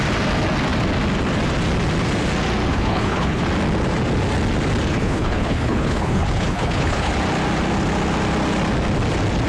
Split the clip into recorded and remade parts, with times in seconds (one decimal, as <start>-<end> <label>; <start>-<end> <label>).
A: 0.0-2.7 recorded; 2.7-3.4 remade; 3.4-4.9 recorded; 4.9-7.1 remade; 7.1-9.5 recorded